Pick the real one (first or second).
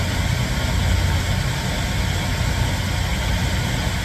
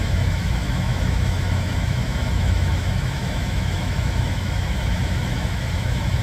first